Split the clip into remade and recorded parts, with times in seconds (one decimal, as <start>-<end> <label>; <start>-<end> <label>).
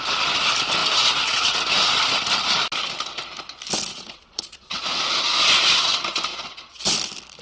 0.0-3.9 recorded; 3.9-5.0 remade; 5.0-6.3 recorded; 6.3-6.8 remade; 6.8-7.4 recorded